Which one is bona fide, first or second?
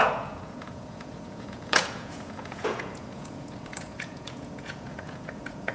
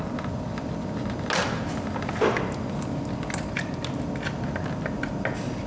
second